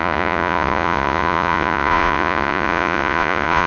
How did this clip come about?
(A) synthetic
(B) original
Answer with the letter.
A